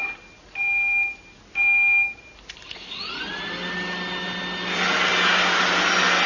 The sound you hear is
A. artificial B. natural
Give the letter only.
B